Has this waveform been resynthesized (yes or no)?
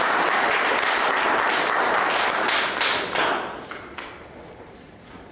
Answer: no